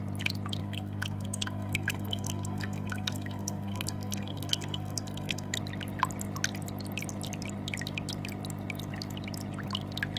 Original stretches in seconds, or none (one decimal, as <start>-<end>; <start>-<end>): 0.0-0.6; 5.6-10.2